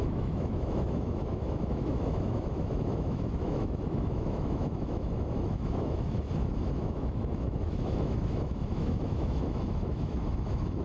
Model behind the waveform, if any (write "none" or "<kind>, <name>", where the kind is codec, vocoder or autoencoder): autoencoder, DAC-VAE